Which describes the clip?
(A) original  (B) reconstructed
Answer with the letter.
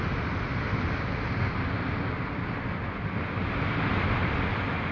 A